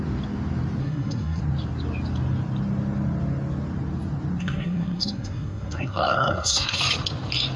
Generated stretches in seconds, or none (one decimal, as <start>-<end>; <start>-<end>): 0.8-1.4; 4.4-6.8